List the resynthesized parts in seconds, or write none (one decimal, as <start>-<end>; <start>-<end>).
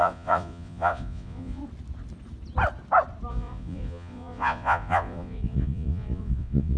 0.0-1.6; 3.3-6.8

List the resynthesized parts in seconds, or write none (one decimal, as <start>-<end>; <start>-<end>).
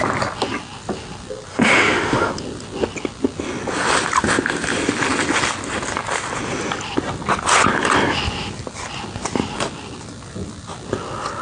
1.5-2.3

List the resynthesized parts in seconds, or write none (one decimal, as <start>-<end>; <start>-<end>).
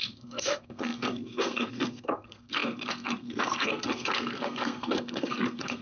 0.0-5.8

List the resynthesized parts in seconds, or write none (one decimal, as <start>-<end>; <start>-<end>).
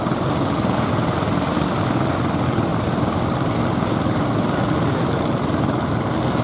none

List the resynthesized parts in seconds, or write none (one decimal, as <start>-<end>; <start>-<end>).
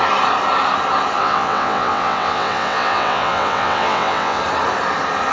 1.2-4.4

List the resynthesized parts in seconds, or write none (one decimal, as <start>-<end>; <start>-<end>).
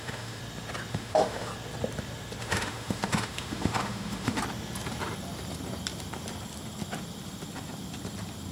0.0-0.4; 0.9-1.5; 2.4-4.4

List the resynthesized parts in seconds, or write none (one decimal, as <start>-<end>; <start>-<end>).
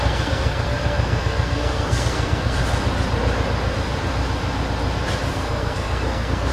0.0-2.6; 5.3-6.5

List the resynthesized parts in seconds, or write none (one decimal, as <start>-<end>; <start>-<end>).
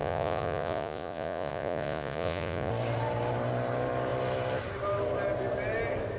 0.0-2.7